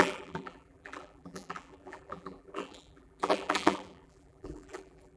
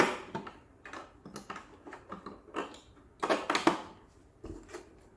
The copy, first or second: first